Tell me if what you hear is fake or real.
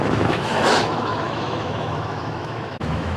fake